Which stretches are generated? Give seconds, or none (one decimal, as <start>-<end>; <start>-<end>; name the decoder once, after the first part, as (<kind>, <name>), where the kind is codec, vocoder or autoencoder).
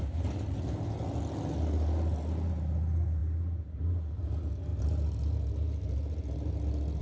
none